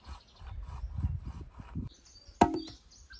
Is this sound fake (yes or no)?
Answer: no